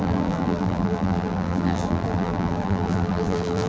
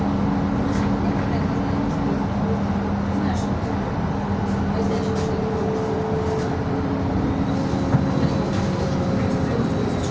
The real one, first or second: second